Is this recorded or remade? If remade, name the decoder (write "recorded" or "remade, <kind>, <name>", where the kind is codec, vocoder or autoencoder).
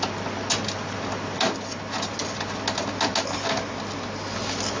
recorded